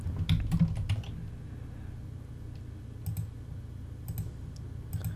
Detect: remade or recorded recorded